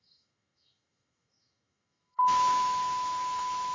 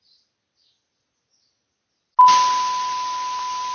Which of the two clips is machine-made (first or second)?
first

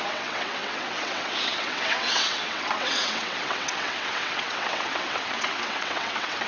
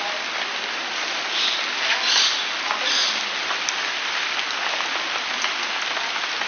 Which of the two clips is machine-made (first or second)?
first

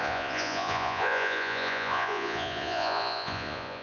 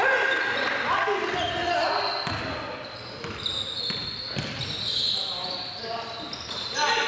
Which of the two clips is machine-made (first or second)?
first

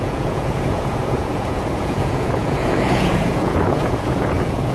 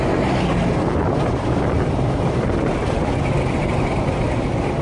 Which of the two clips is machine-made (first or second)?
first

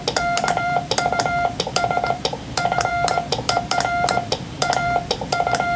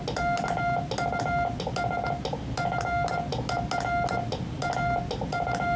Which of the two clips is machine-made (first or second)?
first